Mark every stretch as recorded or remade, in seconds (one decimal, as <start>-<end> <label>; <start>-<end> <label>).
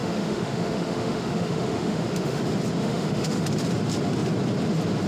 0.0-2.4 remade; 2.4-2.8 recorded; 2.8-3.4 remade; 3.4-5.1 recorded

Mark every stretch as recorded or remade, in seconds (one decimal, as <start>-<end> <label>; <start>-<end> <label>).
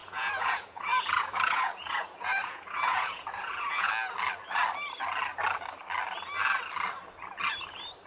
0.0-3.9 remade; 3.9-8.1 recorded